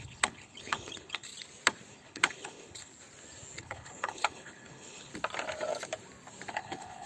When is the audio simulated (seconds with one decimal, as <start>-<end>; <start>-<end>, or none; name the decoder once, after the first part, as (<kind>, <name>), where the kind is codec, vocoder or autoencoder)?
0.0-1.3 (codec, HILCodec); 1.9-2.9; 3.6-5.1; 6.5-7.1